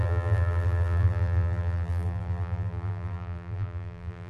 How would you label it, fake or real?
fake